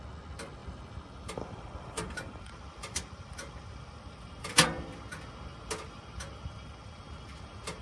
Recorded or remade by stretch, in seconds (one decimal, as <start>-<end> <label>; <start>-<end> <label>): 0.0-0.6 recorded; 0.6-5.0 remade; 5.0-7.8 recorded